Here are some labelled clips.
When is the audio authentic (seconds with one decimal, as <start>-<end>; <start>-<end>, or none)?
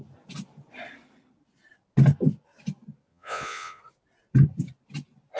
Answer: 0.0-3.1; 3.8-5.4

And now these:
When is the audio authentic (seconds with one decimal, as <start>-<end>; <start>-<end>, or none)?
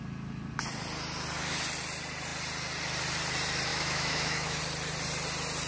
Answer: 0.0-3.7; 4.6-5.7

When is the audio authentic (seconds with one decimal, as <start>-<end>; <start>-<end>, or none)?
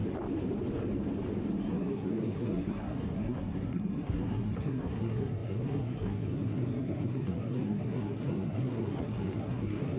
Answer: 0.0-1.6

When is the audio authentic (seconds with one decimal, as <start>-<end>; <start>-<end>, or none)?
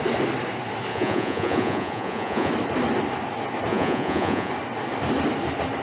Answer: 0.0-0.9; 2.5-3.7; 4.5-5.8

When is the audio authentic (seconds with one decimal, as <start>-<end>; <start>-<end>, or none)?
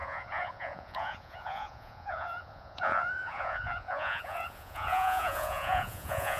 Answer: none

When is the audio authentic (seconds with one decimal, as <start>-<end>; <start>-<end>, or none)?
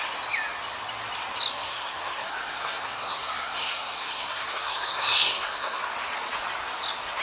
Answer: 0.0-1.5; 5.8-7.2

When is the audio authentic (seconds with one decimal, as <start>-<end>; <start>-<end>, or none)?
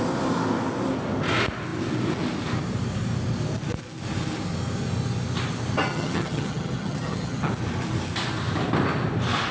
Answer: 0.0-5.9; 7.5-9.5